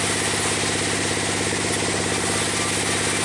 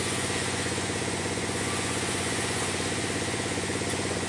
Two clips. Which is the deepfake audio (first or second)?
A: second